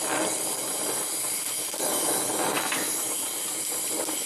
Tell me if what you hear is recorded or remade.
recorded